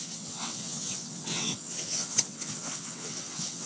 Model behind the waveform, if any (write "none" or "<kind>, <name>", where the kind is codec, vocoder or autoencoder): vocoder, WaveNeXt